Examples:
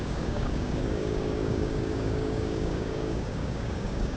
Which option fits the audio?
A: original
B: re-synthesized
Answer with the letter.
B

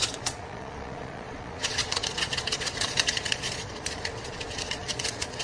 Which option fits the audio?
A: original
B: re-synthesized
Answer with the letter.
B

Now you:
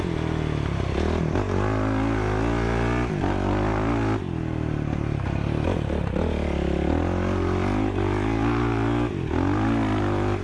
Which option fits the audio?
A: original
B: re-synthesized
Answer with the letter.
A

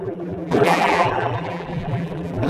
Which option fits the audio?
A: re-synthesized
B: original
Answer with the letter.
A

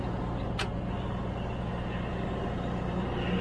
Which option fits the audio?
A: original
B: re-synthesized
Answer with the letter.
A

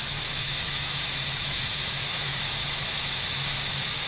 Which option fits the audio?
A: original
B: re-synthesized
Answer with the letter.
B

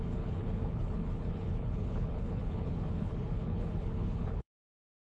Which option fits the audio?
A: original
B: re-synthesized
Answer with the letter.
B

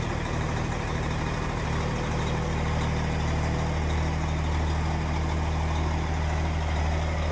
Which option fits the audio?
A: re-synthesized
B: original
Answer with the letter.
B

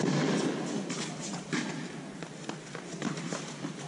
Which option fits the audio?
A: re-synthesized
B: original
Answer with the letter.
A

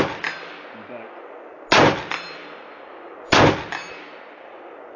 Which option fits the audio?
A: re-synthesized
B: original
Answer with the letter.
B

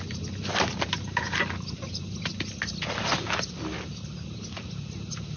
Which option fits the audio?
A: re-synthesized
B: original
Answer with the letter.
B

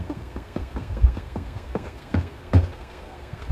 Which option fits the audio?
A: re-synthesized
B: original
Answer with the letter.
A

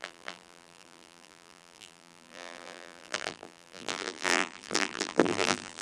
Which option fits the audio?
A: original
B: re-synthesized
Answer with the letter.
B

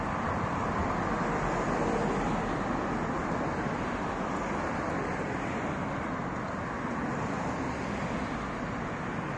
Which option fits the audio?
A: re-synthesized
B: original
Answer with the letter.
B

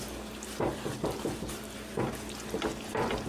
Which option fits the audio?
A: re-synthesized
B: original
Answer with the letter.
B